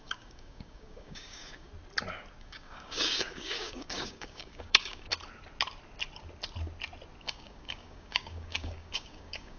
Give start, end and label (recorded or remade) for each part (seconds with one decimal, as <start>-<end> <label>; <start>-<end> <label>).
0.0-1.7 remade; 1.7-2.4 recorded; 2.4-5.1 remade; 5.1-7.2 recorded; 7.2-9.6 remade

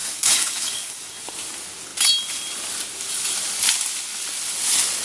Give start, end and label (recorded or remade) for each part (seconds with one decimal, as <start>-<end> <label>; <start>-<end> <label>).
0.0-1.1 remade; 1.1-5.0 recorded

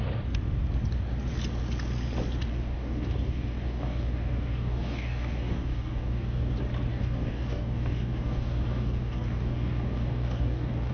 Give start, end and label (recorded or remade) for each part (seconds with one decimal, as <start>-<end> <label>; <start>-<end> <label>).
0.0-2.5 recorded; 2.5-6.5 remade; 6.5-6.9 recorded; 6.9-10.9 remade

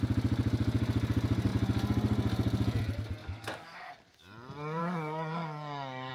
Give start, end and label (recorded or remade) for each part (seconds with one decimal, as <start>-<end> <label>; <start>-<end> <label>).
0.0-3.2 recorded; 3.2-3.9 remade; 3.9-4.8 recorded; 4.8-6.1 remade

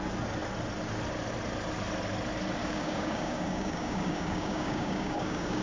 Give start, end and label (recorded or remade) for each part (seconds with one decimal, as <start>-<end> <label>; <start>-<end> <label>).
0.0-2.6 recorded; 2.6-5.6 remade

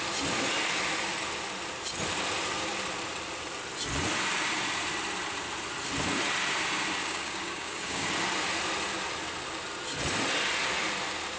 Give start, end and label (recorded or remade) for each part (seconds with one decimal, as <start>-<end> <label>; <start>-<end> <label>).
0.0-7.0 recorded; 7.0-8.1 remade; 8.1-11.4 recorded

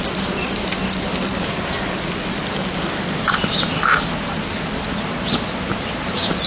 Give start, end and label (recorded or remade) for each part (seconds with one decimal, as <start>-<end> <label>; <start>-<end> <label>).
0.0-6.5 recorded